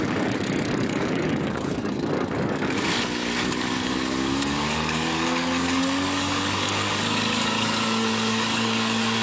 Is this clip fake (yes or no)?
yes